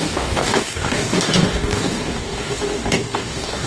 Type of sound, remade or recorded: remade